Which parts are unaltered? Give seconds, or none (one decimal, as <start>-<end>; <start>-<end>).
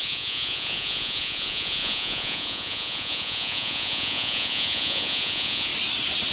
5.7-6.3